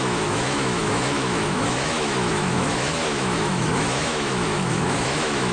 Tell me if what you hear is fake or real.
fake